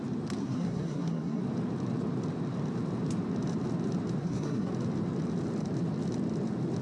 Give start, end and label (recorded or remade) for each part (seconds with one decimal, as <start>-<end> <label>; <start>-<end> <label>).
0.0-0.4 recorded; 0.4-1.4 remade; 1.4-4.2 recorded; 4.2-4.7 remade; 4.7-6.8 recorded